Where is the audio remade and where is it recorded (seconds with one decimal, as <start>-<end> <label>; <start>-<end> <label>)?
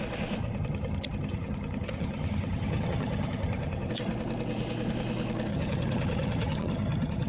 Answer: 0.0-0.4 recorded; 0.4-3.9 remade; 3.9-5.5 recorded; 5.5-7.3 remade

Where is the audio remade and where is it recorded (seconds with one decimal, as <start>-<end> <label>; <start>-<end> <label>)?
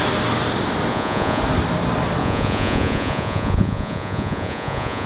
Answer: 0.0-0.9 recorded; 0.9-1.4 remade; 1.4-2.2 recorded; 2.2-5.1 remade